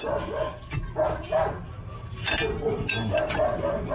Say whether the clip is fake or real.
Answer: real